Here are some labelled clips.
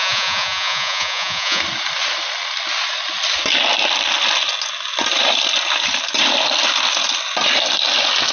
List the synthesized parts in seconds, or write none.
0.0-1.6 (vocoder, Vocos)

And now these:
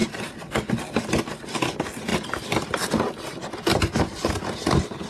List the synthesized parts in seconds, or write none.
none

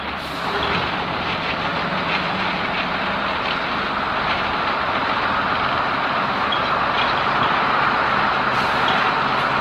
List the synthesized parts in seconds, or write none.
none

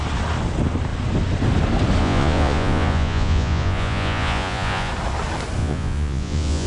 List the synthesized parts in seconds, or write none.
2.0-4.9 (vocoder, Vocos); 5.6-6.7

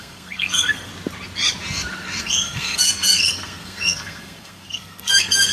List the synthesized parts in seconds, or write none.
0.0-0.9 (codec, SNAC); 2.2-5.5

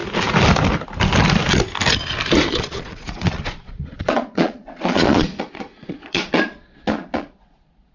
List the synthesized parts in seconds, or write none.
2.5-7.9 (vocoder, Vocos)

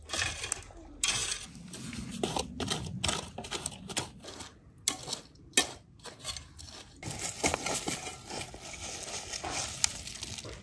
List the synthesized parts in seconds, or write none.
none

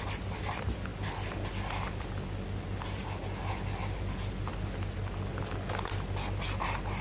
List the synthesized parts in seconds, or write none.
none